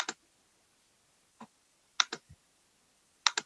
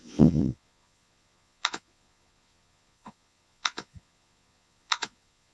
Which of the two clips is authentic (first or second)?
first